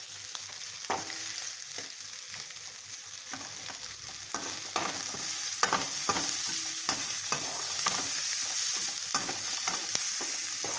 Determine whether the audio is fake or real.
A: real